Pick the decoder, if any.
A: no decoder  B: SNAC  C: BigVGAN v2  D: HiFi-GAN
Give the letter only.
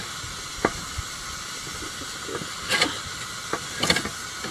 C